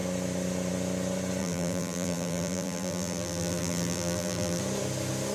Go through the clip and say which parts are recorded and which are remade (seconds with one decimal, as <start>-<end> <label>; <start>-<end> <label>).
0.0-1.4 recorded; 1.4-4.6 remade; 4.6-5.3 recorded